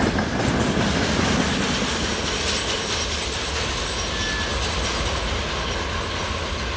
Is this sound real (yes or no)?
yes